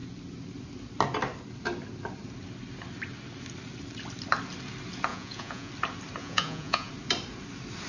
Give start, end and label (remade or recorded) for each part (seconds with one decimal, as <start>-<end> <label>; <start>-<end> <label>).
0.0-5.1 recorded; 5.1-5.7 remade; 5.7-6.2 recorded; 6.2-6.9 remade; 6.9-7.9 recorded